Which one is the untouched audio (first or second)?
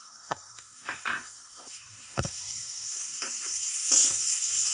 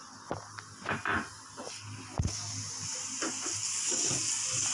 second